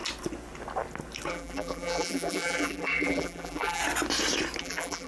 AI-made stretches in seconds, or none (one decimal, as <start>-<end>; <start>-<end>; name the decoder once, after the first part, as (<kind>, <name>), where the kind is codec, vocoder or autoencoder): 1.3-3.8 (vocoder, BigVGAN v2); 4.6-5.1